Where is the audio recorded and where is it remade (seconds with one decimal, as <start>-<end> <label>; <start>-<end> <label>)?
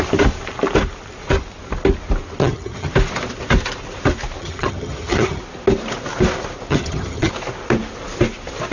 0.0-2.4 recorded; 2.4-2.9 remade; 2.9-4.4 recorded; 4.4-5.4 remade; 5.4-6.7 recorded; 6.7-7.3 remade; 7.3-8.7 recorded